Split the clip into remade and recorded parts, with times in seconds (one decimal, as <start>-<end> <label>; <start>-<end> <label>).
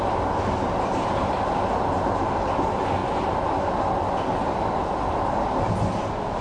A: 0.0-6.4 recorded